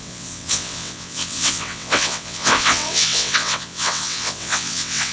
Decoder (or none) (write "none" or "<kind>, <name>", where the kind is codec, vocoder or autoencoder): vocoder, WaveNeXt